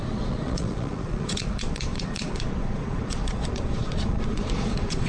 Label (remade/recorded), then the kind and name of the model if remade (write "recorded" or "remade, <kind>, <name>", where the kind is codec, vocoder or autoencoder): remade, vocoder, Vocos